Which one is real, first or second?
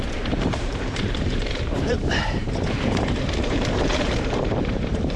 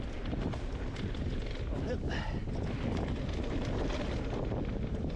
second